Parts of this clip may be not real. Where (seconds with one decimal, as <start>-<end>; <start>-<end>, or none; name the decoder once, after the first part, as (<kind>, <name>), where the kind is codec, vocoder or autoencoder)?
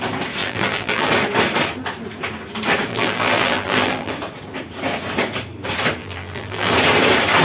0.4-1.1 (vocoder, BigVGAN v2); 2.9-4.1; 6.0-6.7